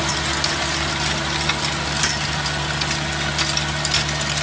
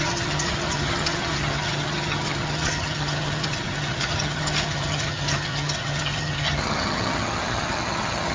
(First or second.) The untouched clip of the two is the first